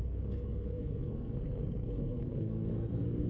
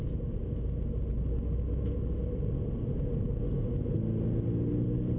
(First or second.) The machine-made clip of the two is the first